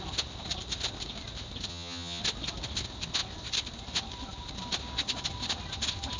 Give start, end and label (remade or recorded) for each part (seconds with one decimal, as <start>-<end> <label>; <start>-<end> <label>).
0.0-1.7 recorded; 1.7-2.2 remade; 2.2-6.2 recorded